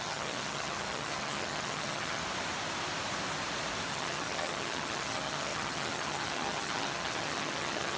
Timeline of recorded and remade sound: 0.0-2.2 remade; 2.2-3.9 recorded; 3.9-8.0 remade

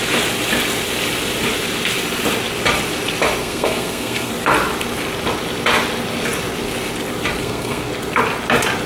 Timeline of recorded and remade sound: 0.0-3.4 recorded; 3.4-4.3 remade; 4.3-7.4 recorded; 7.4-7.9 remade; 7.9-8.9 recorded

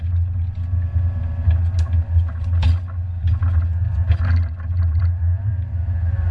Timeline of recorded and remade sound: 0.0-6.3 recorded

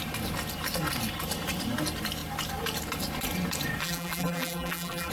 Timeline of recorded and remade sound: 0.0-3.8 recorded; 3.8-5.1 remade

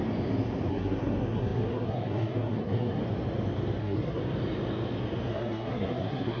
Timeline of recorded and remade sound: 0.0-0.7 recorded; 0.7-3.0 remade; 3.0-3.8 recorded; 3.8-4.2 remade; 4.2-5.3 recorded; 5.3-6.4 remade

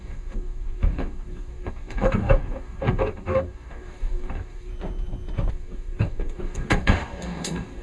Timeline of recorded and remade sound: 0.0-4.7 remade; 4.7-5.5 recorded; 5.5-7.8 remade